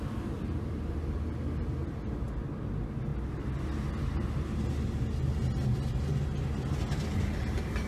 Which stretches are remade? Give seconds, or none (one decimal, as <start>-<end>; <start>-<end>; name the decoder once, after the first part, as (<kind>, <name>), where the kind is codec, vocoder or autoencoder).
none